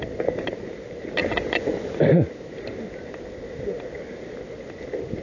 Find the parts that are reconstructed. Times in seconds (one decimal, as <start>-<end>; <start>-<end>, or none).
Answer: 1.2-2.0